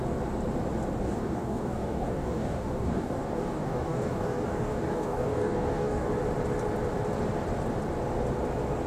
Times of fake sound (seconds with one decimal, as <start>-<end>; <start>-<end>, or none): 1.0-6.1